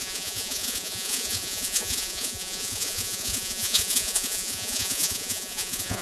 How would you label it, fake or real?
fake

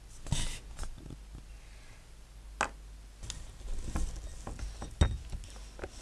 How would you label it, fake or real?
real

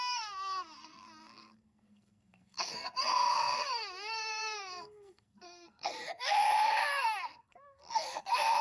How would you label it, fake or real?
fake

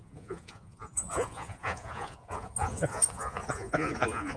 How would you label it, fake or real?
fake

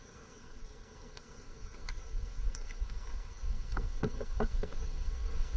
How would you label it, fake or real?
fake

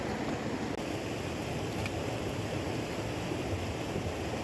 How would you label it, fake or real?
real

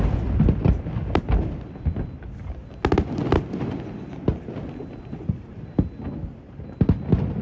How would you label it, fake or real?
real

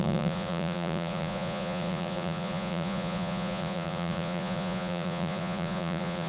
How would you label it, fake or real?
fake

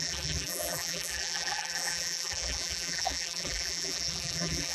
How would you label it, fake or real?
fake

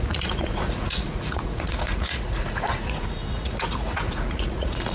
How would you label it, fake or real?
fake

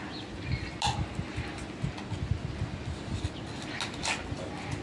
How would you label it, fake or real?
real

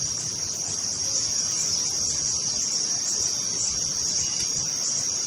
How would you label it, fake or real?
real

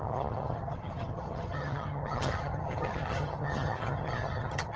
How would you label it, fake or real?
fake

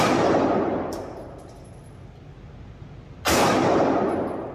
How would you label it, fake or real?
real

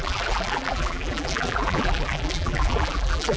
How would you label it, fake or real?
fake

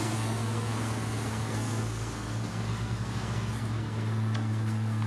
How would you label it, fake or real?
fake